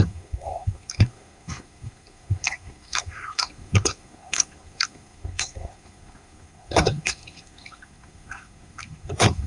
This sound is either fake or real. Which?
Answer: fake